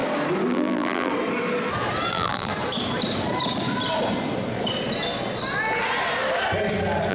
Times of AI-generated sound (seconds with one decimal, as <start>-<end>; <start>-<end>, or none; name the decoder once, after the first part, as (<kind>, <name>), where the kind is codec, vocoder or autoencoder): 0.5-1.1 (vocoder, BigVGAN v2); 2.1-2.5